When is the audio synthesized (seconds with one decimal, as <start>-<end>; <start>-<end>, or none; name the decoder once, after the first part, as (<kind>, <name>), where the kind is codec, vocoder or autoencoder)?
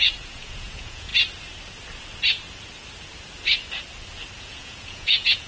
0.0-1.1 (vocoder, Vocos); 4.4-5.5